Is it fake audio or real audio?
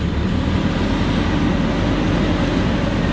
real